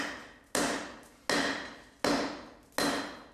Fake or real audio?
real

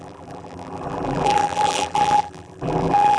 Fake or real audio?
fake